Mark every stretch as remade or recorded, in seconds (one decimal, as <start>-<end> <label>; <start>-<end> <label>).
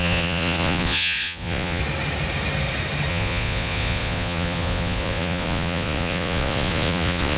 0.0-1.8 remade; 1.8-3.1 recorded; 3.1-7.4 remade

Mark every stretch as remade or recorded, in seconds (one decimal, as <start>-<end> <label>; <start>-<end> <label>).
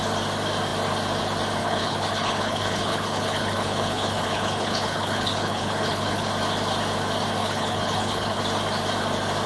0.0-1.6 recorded; 1.6-6.3 remade; 6.3-7.4 recorded; 7.4-8.4 remade; 8.4-9.5 recorded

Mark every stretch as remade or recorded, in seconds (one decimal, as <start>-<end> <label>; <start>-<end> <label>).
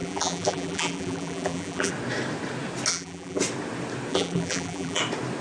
0.0-1.9 remade; 1.9-2.9 recorded; 2.9-3.4 remade; 3.4-4.1 recorded; 4.1-5.0 remade; 5.0-5.4 recorded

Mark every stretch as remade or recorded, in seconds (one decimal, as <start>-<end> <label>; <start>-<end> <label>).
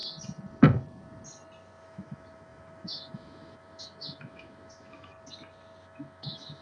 0.0-1.8 recorded; 1.8-5.1 remade; 5.1-5.8 recorded; 5.8-6.6 remade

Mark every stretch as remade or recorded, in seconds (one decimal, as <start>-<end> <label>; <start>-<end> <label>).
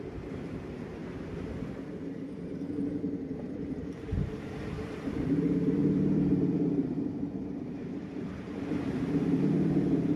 0.0-1.0 remade; 1.0-2.1 recorded; 2.1-10.2 remade